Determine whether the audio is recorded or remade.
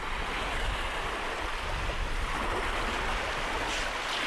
recorded